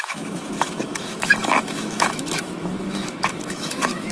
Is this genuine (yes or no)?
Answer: no